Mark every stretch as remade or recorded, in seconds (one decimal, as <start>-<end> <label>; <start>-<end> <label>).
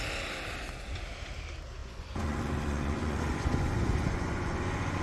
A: 0.0-1.8 recorded; 1.8-5.0 remade